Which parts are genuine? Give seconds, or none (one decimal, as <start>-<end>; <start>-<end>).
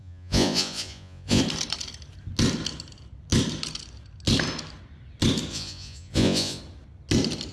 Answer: 1.4-5.5; 6.6-7.5